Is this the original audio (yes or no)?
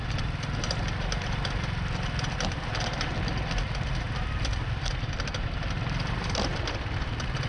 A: yes